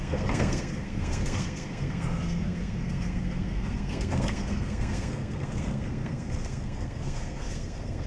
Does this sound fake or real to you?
fake